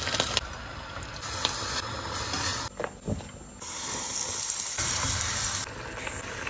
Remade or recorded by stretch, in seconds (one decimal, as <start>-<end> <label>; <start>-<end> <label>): 0.0-6.5 recorded